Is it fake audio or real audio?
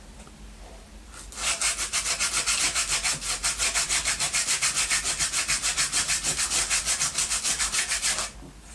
real